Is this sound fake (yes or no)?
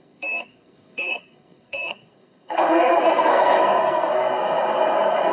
yes